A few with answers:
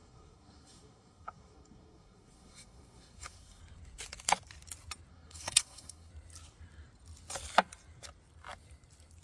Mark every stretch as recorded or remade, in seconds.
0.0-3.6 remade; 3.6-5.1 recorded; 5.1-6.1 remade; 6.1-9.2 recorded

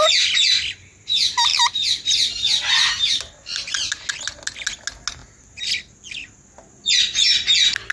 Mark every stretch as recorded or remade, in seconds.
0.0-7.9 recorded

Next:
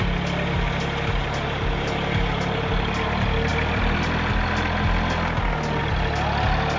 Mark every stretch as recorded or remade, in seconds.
0.0-6.8 recorded

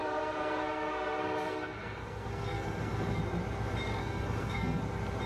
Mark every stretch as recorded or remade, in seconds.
0.0-3.2 remade; 3.2-4.0 recorded; 4.0-4.8 remade; 4.8-5.3 recorded

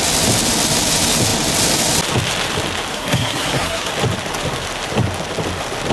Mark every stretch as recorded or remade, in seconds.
0.0-2.9 recorded; 2.9-3.9 remade; 3.9-5.9 recorded